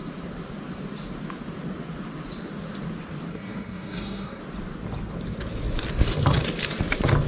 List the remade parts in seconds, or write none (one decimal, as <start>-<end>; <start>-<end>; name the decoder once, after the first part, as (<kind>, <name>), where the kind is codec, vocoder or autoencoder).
3.3-4.4 (codec, SNAC)

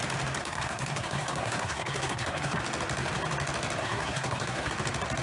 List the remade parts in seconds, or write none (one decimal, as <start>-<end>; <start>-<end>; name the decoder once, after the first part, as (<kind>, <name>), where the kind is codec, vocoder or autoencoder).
0.4-2.6 (codec, SNAC); 3.8-4.7

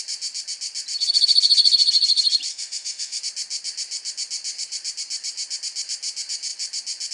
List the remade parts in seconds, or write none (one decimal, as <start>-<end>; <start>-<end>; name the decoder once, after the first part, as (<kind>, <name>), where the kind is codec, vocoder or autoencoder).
2.5-3.2 (autoencoder, DAC-VAE)

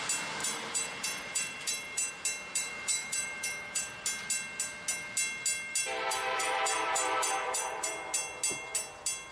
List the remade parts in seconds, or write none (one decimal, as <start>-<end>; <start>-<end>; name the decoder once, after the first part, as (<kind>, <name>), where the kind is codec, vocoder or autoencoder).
0.4-2.1 (vocoder, BigVGAN v2); 2.6-4.0; 5.8-7.9

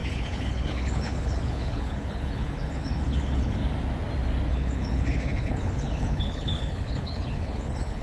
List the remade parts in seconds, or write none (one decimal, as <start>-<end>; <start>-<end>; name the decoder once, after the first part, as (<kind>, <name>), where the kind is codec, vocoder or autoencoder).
0.0-3.6 (codec, HILCodec); 4.5-8.0